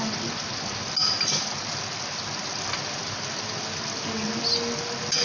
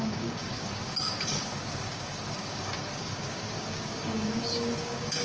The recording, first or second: first